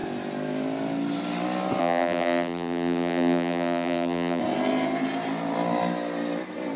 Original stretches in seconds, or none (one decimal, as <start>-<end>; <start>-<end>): 0.0-1.8; 4.4-6.8